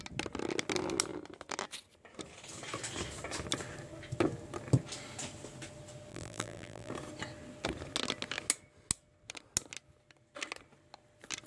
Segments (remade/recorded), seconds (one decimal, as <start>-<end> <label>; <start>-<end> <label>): 0.0-6.1 recorded; 6.1-6.9 remade; 6.9-11.5 recorded